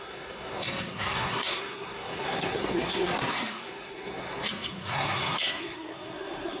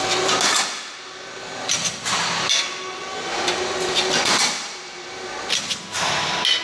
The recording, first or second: second